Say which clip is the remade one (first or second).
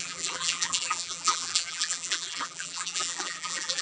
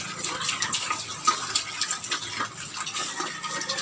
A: first